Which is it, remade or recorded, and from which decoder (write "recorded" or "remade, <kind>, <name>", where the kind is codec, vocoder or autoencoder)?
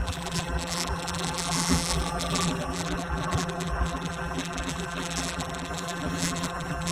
remade, vocoder, BigVGAN v2